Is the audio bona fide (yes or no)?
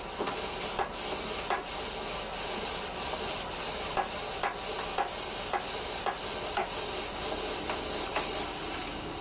yes